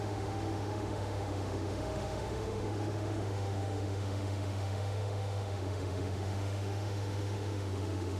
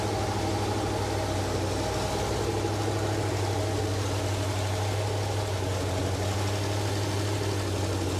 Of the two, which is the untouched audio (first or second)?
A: second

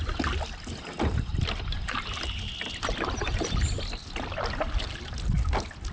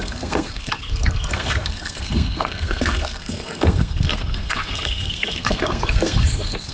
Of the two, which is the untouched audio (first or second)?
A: first